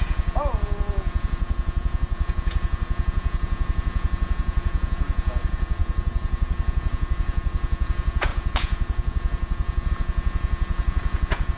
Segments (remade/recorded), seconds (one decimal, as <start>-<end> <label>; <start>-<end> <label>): 0.0-11.6 remade